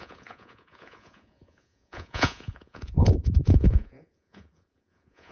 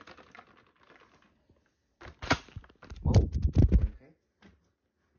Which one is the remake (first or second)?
first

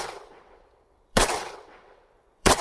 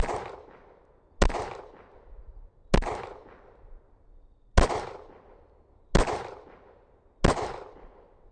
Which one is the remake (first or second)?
first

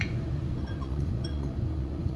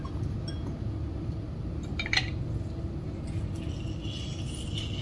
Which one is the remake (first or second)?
first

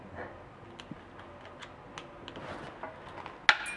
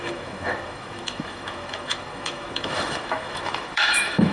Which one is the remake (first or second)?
second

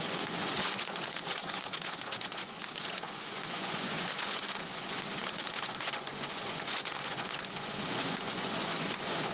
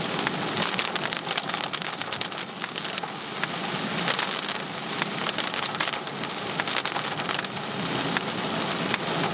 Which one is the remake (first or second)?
first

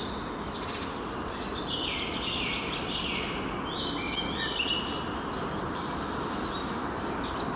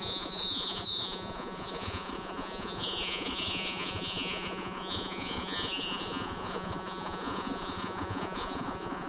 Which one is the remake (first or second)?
second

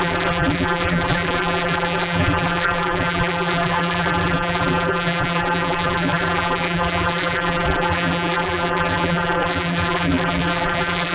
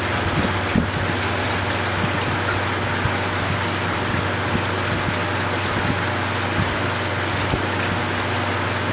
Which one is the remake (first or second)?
first